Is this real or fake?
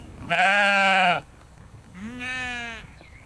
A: fake